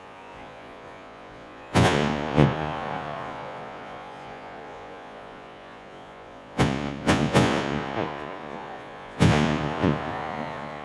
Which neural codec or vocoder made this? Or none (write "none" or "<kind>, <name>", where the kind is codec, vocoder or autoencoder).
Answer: vocoder, Vocos